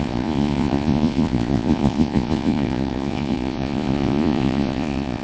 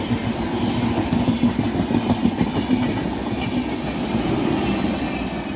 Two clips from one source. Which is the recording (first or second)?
second